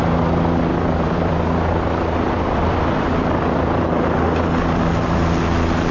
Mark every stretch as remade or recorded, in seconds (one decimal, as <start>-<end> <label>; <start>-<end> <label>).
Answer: 0.0-0.7 recorded; 0.7-4.2 remade; 4.2-5.9 recorded